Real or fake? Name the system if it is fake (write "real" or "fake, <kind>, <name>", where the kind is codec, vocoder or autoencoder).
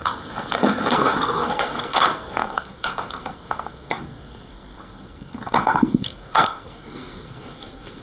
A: fake, codec, SNAC